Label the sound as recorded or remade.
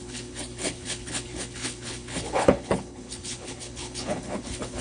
remade